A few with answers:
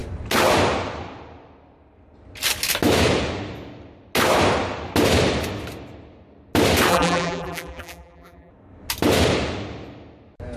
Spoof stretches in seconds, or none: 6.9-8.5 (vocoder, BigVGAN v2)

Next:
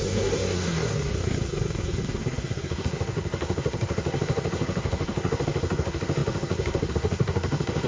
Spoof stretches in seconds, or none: 0.0-7.9 (codec, SNAC)